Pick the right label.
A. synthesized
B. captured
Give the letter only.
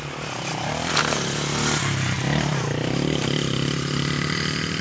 A